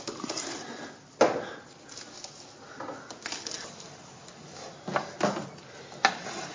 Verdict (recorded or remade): recorded